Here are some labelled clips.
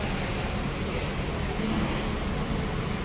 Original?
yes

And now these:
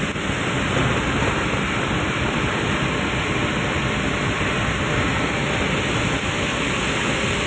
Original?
yes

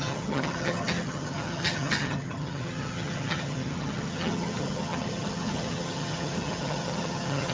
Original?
no